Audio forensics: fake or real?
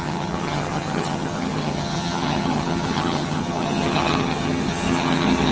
fake